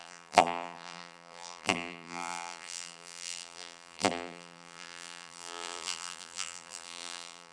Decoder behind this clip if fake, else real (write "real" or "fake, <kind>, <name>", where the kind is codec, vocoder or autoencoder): fake, vocoder, BigVGAN v2